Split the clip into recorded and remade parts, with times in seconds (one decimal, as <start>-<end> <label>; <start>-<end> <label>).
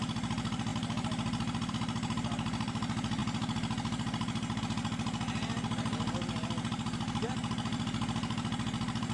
0.0-9.1 recorded